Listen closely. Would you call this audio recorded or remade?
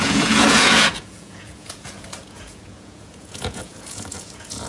remade